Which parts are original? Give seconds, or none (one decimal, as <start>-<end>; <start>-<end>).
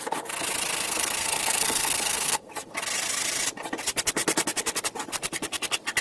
0.0-0.7; 2.5-6.0